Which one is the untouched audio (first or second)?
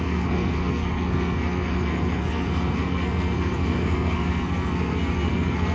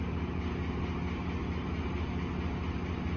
second